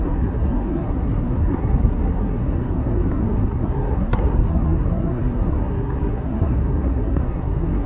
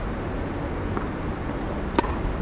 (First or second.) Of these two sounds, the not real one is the first